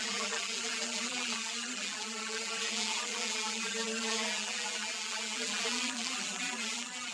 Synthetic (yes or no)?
yes